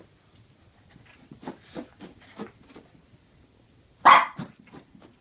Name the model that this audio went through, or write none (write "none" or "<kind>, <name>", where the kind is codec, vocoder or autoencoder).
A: none